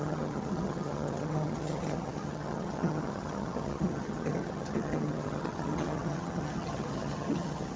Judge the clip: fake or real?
fake